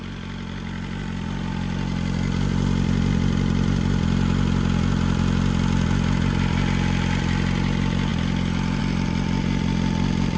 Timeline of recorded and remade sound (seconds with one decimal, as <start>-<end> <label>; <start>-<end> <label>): 0.0-10.4 recorded